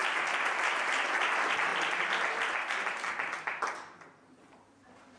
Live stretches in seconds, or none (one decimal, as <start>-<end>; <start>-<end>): 0.0-5.2

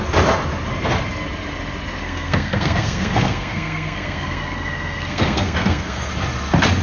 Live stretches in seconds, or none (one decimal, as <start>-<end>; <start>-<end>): 0.0-2.0; 6.1-6.8

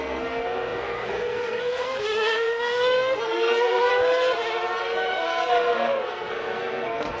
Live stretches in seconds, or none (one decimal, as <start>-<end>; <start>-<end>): 3.9-4.8